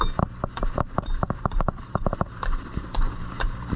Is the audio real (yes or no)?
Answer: no